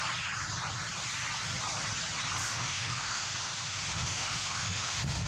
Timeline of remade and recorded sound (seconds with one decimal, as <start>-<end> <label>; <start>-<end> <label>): 0.0-2.4 recorded; 2.4-5.3 remade

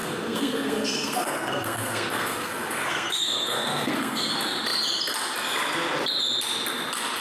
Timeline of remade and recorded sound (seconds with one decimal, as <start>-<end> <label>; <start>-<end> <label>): 0.0-4.3 remade; 4.3-7.2 recorded

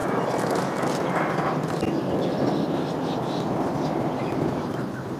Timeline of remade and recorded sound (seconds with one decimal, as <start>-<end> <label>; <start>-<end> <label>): 0.0-5.2 recorded

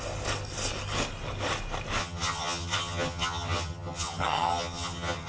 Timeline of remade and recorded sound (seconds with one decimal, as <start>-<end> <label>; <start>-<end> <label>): 0.0-2.0 recorded; 2.0-5.3 remade

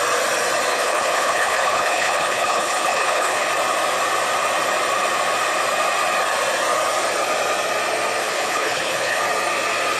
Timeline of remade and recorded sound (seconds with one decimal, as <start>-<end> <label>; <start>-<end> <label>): 0.0-0.7 recorded; 0.7-3.5 remade; 3.5-8.2 recorded; 8.2-9.2 remade; 9.2-10.0 recorded

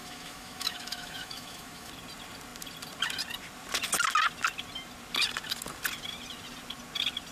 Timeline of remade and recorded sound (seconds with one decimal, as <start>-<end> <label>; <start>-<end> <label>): 0.0-1.9 remade; 1.9-7.3 recorded